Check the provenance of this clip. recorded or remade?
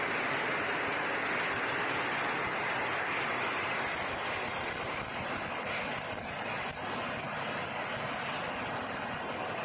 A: recorded